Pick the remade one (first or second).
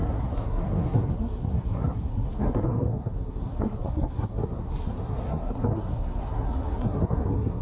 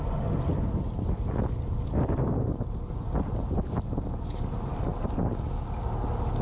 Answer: first